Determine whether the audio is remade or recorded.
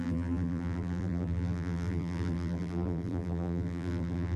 remade